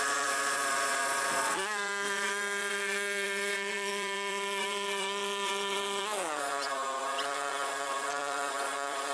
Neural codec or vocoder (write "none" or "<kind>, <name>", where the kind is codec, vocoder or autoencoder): vocoder, Vocos